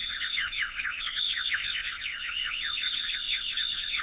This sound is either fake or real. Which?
fake